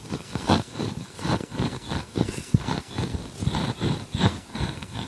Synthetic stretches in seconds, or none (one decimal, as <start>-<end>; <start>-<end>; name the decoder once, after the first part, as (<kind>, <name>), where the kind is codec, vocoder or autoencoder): 0.0-3.2 (codec, SNAC); 4.2-5.1